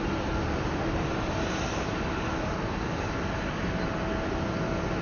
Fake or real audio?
real